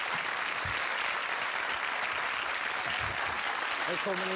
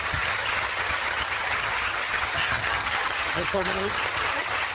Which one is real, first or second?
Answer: first